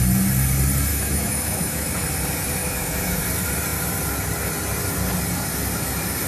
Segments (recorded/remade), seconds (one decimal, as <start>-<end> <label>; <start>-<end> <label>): 0.0-0.9 recorded; 0.9-1.9 remade; 1.9-2.6 recorded; 2.6-3.2 remade; 3.2-6.3 recorded

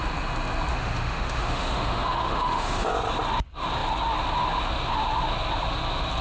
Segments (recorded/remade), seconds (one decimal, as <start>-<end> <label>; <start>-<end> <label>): 0.0-0.7 recorded; 0.7-2.9 remade; 2.9-6.2 recorded